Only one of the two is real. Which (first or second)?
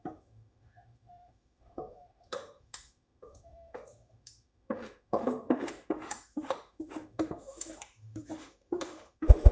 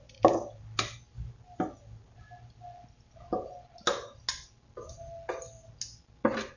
second